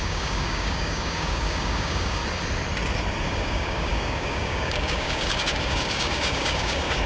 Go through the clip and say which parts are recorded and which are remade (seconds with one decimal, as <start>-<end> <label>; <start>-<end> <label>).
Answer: 0.0-2.2 remade; 2.2-3.2 recorded; 3.2-7.1 remade